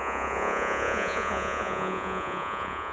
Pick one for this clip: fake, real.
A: fake